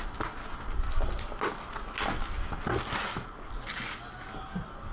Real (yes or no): yes